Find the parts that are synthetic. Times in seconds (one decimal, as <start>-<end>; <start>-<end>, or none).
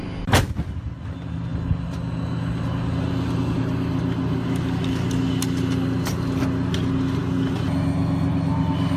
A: none